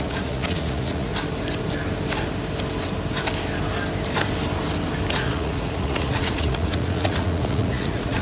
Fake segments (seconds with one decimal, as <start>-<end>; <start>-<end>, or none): 0.0-1.1; 5.1-8.2